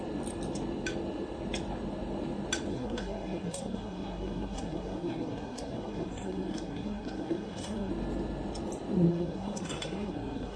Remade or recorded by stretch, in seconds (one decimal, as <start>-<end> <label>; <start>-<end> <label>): 0.0-2.7 recorded; 2.7-7.9 remade; 7.9-9.1 recorded; 9.1-10.6 remade